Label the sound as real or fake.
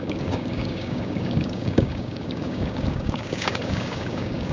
fake